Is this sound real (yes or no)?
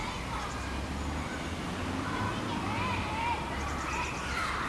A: yes